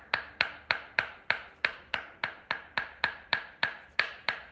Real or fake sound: fake